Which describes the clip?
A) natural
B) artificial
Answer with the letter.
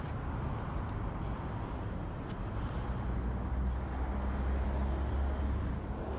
A